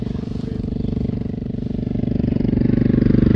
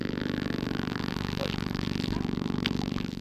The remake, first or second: second